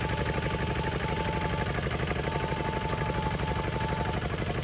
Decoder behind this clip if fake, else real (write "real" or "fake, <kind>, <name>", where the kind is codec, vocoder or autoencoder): real